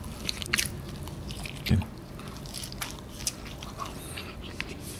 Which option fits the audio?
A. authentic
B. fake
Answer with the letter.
A